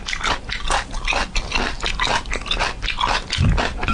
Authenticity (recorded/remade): recorded